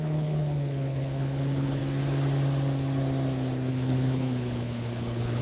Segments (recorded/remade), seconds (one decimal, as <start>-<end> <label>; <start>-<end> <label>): 0.0-1.8 remade; 1.8-3.7 recorded; 3.7-5.4 remade